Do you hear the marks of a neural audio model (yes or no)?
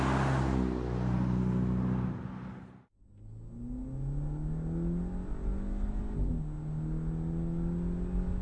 no